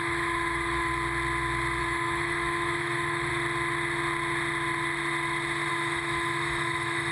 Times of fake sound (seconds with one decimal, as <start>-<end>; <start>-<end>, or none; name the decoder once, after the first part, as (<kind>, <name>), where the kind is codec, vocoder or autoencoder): 0.0-0.9 (autoencoder, DAC-VAE); 1.8-3.3; 5.7-7.1